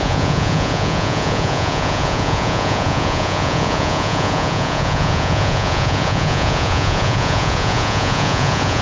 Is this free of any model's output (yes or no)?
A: no